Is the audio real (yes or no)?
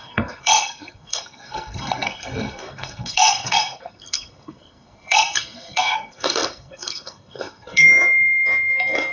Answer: no